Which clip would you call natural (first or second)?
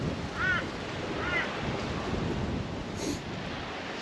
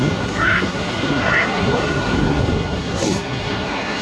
first